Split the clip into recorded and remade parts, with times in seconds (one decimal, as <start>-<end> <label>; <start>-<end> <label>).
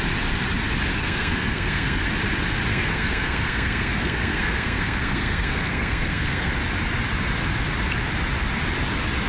0.0-0.9 recorded; 0.9-2.1 remade; 2.1-2.7 recorded; 2.7-6.5 remade; 6.5-9.3 recorded